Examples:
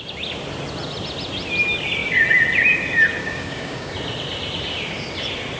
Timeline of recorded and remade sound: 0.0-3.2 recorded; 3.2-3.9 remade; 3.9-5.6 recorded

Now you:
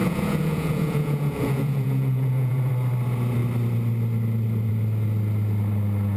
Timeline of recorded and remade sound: 0.0-2.7 remade; 2.7-6.2 recorded

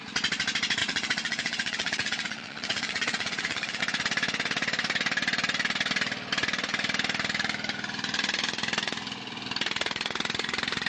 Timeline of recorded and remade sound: 0.0-0.8 recorded; 0.8-3.8 remade; 3.8-10.9 recorded

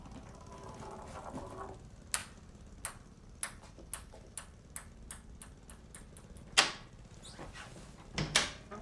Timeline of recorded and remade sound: 0.0-8.8 recorded